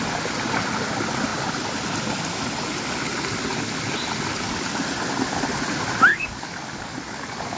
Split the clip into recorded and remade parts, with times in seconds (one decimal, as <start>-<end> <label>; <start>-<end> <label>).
0.0-6.1 recorded; 6.1-7.6 remade